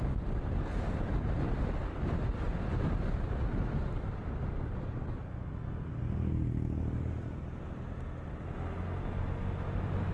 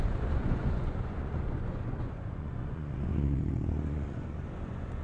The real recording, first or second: first